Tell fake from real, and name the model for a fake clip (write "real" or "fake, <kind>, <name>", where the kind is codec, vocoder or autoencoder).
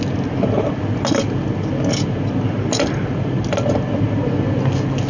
real